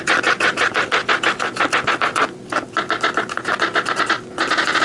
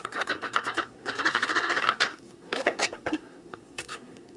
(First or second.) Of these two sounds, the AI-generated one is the second